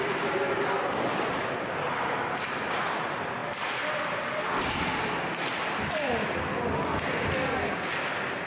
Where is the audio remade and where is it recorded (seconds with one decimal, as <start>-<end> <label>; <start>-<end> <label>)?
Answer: 0.0-8.5 recorded

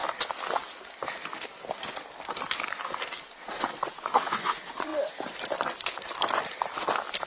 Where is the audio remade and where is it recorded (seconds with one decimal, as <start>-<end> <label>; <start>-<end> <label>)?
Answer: 0.0-3.1 recorded; 3.1-4.9 remade; 4.9-7.3 recorded

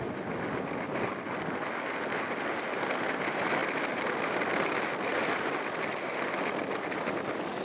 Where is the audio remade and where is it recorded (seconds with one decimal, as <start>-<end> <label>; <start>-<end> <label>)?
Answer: 0.0-7.6 recorded

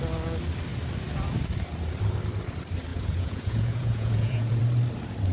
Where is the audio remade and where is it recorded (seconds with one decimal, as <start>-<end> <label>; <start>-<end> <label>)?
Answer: 0.0-2.9 recorded; 2.9-4.6 remade; 4.6-5.3 recorded

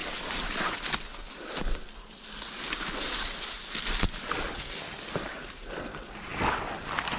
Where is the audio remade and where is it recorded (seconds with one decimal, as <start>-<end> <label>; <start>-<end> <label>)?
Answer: 0.0-7.2 recorded

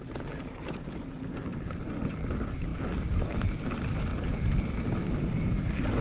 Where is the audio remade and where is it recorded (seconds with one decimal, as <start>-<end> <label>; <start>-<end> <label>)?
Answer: 0.0-6.0 recorded

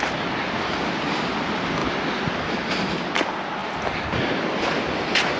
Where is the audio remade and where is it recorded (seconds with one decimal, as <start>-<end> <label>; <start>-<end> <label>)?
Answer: 0.0-5.4 recorded

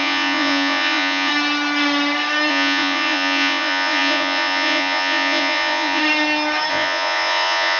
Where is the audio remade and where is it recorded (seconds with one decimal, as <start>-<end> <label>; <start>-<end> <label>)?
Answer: 0.0-1.3 remade; 1.3-2.5 recorded; 2.5-6.0 remade; 6.0-6.7 recorded; 6.7-7.8 remade